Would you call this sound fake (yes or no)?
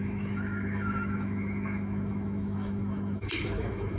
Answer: yes